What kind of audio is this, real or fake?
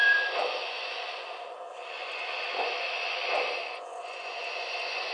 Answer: fake